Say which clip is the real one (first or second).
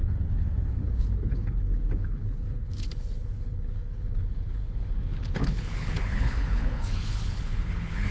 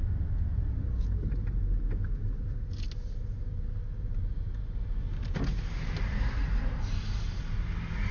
second